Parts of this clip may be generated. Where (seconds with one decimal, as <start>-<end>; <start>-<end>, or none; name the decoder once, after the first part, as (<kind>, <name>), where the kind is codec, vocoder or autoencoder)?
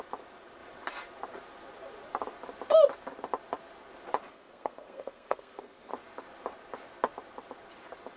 4.3-5.9 (codec, SNAC)